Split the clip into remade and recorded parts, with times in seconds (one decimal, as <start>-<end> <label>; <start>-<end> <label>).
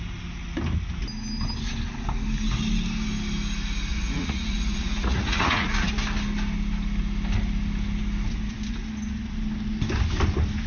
0.0-3.9 recorded; 3.9-5.9 remade; 5.9-10.7 recorded